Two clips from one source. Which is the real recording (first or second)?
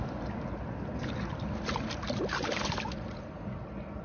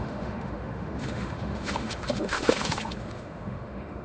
first